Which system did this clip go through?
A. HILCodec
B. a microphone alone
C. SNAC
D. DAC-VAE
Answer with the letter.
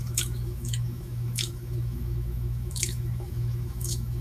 D